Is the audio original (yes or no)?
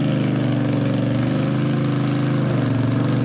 yes